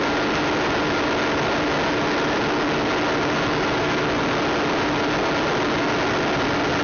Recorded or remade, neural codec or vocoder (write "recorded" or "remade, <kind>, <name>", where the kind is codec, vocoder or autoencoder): recorded